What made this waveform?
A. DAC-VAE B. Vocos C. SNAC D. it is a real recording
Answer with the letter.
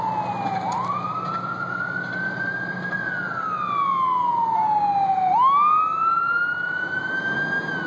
D